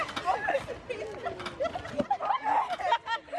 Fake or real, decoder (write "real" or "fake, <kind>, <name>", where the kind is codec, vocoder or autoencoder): real